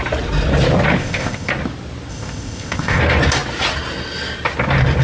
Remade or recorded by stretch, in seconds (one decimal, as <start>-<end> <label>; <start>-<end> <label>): 0.0-1.0 recorded; 1.0-1.5 remade; 1.5-2.1 recorded; 2.1-3.0 remade; 3.0-5.0 recorded